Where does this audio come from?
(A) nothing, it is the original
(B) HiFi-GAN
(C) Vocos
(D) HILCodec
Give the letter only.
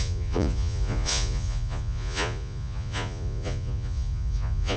C